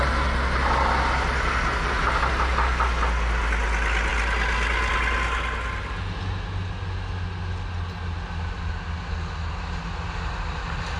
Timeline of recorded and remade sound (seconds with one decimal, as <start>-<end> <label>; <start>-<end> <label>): 0.0-11.0 recorded